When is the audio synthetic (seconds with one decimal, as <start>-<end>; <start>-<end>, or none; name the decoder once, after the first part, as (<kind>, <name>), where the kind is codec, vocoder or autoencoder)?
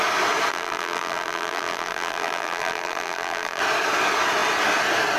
0.5-3.6 (vocoder, BigVGAN v2)